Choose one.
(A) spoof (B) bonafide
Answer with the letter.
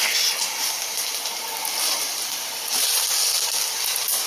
B